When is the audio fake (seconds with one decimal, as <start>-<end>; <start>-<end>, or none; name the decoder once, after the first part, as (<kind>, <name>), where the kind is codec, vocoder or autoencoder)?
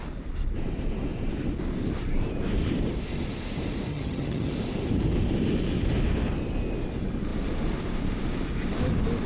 3.9-4.5 (vocoder, HiFi-GAN)